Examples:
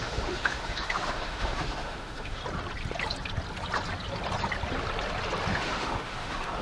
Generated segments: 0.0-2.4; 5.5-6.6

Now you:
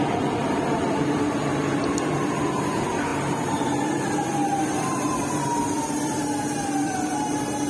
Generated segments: 0.0-7.7